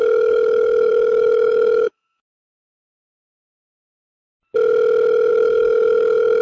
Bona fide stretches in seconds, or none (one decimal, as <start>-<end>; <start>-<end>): 3.5-5.3